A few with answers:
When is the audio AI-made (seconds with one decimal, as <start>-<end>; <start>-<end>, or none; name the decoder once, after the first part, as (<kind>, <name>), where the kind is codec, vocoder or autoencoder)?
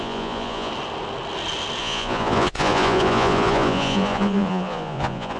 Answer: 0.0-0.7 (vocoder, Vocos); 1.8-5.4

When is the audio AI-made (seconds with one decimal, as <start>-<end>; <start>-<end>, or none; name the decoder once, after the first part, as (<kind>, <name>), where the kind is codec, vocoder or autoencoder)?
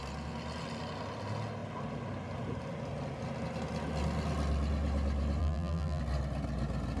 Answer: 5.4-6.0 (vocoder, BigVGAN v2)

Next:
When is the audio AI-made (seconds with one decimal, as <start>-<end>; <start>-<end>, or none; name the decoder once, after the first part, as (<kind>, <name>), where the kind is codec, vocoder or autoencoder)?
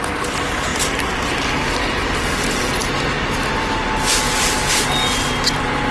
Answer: none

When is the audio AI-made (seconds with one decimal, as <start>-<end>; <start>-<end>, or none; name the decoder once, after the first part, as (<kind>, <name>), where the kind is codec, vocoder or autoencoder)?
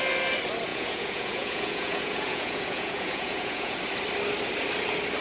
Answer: 0.7-3.8 (vocoder, Vocos)